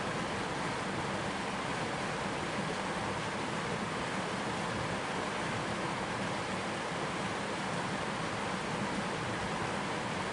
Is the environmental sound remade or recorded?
recorded